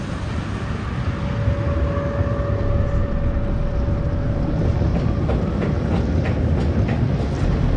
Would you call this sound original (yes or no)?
yes